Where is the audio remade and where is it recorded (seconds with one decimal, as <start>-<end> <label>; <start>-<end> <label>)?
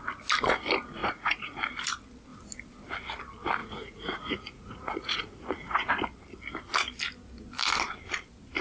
0.0-1.0 recorded; 1.0-1.6 remade; 1.6-3.6 recorded; 3.6-5.9 remade; 5.9-8.6 recorded